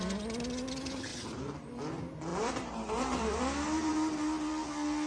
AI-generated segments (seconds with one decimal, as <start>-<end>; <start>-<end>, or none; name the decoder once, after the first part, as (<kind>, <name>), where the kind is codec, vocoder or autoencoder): 1.1-1.8 (vocoder, BigVGAN v2); 2.3-3.4